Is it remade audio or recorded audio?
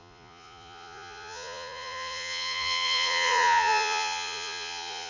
remade